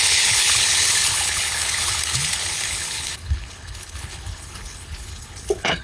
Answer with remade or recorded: remade